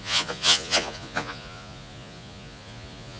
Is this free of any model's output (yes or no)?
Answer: no